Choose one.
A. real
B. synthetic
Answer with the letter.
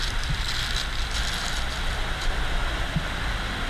A